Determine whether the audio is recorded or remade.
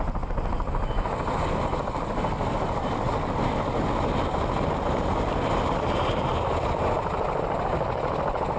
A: recorded